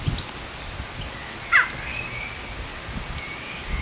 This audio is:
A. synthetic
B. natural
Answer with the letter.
B